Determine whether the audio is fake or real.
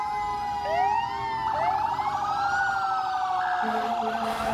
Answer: real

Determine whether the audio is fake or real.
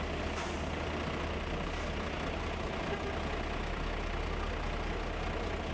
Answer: real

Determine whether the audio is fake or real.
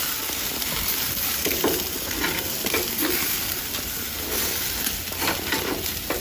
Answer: real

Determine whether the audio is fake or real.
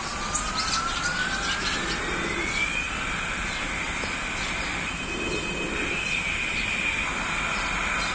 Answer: real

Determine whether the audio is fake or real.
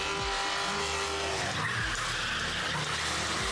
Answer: real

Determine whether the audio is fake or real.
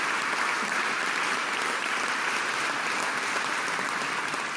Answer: real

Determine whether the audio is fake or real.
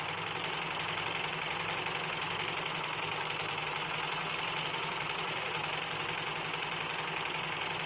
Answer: real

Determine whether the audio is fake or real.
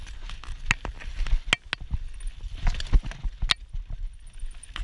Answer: real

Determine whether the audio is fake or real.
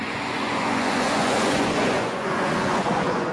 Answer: fake